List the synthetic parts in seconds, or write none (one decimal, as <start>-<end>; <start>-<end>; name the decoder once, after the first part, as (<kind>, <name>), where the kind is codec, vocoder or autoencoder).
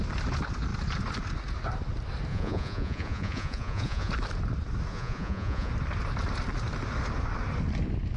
2.3-4.1 (vocoder, Vocos); 4.9-5.7